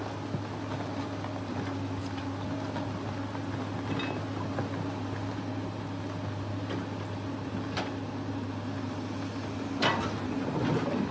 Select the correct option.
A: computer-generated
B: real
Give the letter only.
B